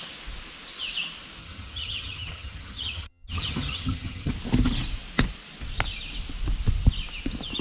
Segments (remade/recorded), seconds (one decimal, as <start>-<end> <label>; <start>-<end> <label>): 0.0-1.4 recorded; 1.4-4.3 remade; 4.3-7.6 recorded